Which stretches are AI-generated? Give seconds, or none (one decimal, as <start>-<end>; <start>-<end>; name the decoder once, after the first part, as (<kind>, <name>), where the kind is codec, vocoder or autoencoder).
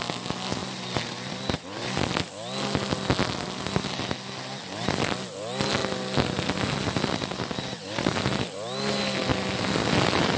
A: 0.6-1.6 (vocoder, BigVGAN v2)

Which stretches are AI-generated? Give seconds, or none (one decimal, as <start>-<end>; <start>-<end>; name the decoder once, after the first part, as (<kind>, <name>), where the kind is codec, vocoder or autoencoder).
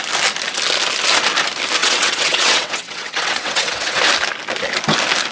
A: 1.8-4.0 (vocoder, WaveNeXt)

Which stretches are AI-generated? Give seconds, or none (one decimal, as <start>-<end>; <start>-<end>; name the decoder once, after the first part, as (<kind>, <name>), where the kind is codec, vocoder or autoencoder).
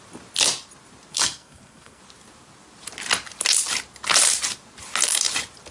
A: 1.1-2.0 (codec, SNAC)